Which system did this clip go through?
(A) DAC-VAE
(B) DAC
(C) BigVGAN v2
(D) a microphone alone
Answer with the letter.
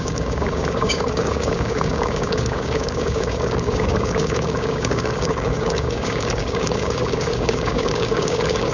B